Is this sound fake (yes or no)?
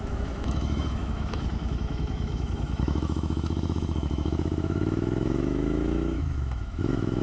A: yes